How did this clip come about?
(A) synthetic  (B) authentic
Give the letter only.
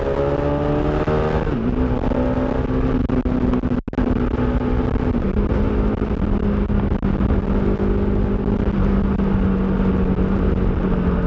B